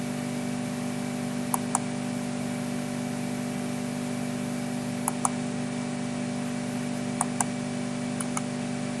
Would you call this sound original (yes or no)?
yes